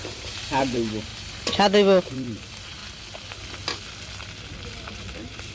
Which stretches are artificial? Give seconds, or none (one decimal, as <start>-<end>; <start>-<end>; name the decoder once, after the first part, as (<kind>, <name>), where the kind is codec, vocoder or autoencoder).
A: 0.0-1.1 (vocoder, BigVGAN v2); 2.0-2.8; 5.1-5.5